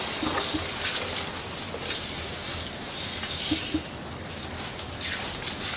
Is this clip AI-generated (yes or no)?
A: no